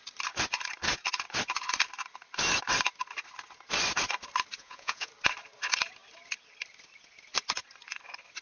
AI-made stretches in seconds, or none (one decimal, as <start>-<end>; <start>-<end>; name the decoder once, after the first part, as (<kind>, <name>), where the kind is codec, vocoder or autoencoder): 4.6-5.1 (vocoder, Vocos)